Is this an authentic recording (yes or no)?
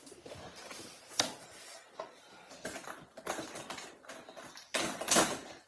yes